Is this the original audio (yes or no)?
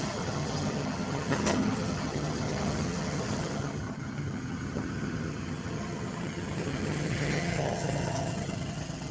no